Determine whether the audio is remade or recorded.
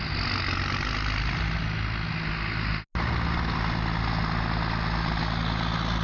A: recorded